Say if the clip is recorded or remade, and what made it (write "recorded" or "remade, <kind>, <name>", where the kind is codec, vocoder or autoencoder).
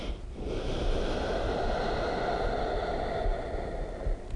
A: recorded